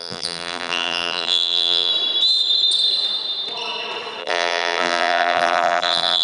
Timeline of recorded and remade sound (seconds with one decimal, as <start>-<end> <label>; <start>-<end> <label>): 0.0-1.9 remade; 1.9-4.2 recorded; 4.2-6.2 remade